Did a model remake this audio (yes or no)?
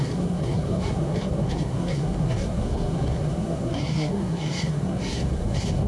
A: yes